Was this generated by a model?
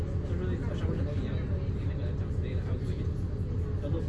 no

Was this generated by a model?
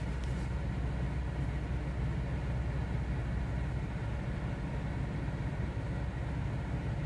no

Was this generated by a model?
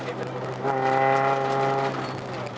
no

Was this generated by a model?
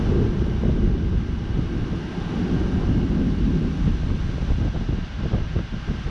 no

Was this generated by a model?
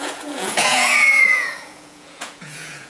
yes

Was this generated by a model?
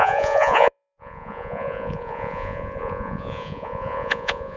yes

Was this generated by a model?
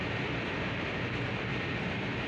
no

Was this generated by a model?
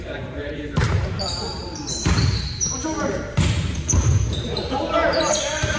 yes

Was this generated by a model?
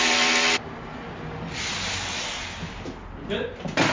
no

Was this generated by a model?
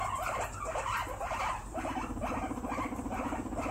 no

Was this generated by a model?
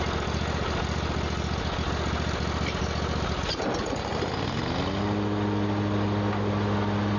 no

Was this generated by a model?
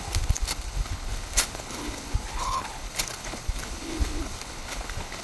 yes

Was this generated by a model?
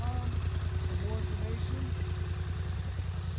no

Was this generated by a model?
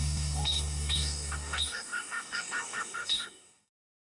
yes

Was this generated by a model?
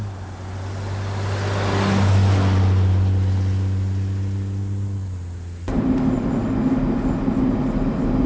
no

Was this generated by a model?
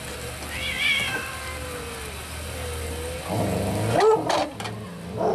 no